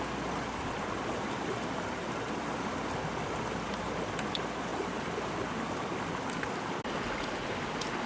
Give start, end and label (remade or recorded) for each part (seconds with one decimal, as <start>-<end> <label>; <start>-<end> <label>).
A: 0.0-8.1 recorded